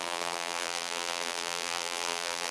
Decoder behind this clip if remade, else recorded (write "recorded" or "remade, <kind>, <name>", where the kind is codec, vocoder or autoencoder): remade, vocoder, BigVGAN v2